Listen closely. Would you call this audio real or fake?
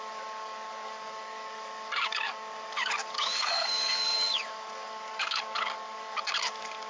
fake